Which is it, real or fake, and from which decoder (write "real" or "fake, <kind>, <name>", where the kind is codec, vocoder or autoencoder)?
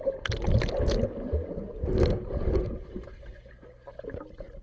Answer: real